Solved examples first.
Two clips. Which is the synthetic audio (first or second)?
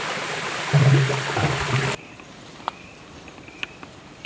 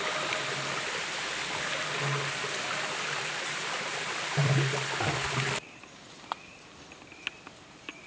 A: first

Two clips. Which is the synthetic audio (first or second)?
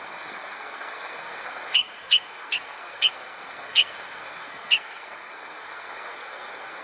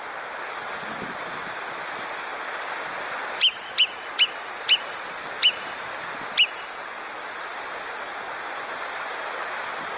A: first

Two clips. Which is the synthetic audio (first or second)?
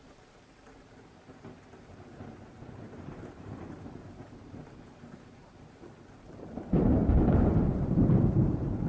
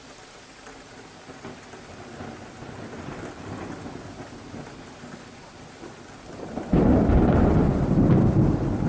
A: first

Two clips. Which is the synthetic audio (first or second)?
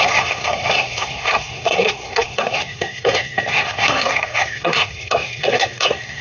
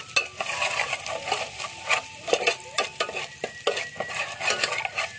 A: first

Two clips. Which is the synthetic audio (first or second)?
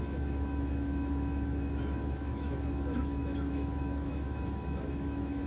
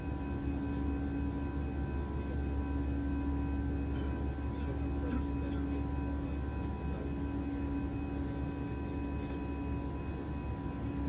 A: first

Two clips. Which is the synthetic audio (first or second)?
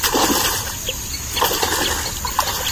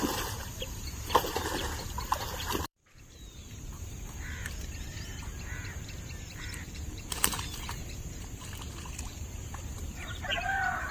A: second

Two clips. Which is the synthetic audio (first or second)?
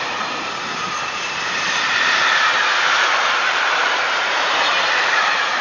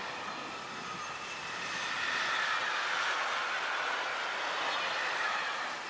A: first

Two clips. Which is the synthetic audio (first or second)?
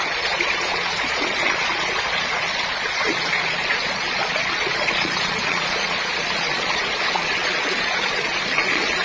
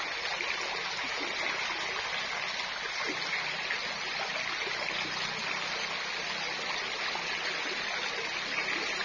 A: first